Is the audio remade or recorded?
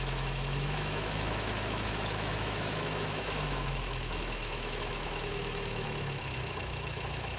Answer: remade